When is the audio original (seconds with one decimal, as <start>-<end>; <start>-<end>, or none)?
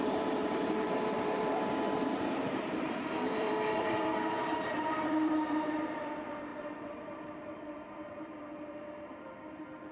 none